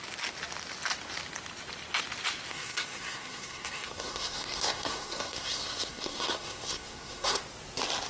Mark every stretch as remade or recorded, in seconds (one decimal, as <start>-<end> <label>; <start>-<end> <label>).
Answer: 0.0-2.5 recorded; 2.5-7.4 remade; 7.4-8.1 recorded